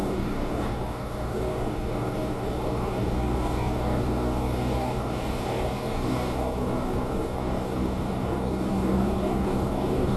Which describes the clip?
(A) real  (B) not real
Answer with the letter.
B